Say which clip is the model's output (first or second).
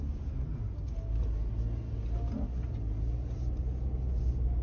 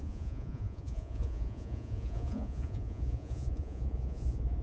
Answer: second